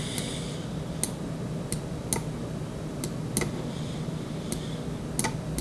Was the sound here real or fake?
real